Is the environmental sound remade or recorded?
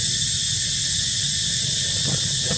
recorded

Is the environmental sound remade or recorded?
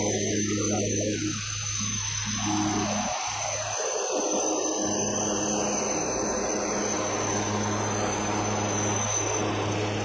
recorded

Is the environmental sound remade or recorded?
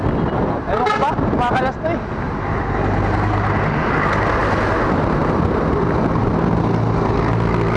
recorded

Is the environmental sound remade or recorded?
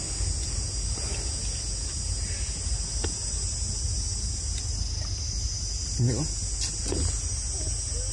recorded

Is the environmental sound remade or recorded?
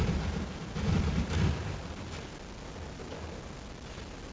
recorded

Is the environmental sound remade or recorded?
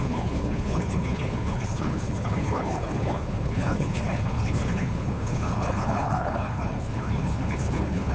remade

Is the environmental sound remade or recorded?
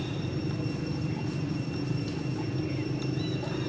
recorded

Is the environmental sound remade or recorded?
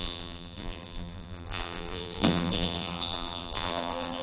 remade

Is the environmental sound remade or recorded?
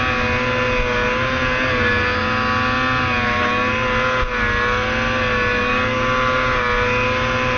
recorded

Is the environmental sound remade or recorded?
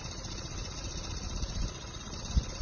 remade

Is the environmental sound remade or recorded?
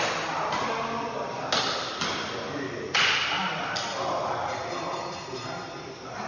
recorded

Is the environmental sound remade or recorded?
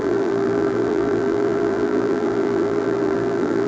remade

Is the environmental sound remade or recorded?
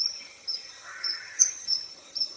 remade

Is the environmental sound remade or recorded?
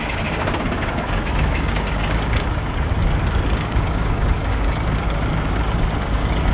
remade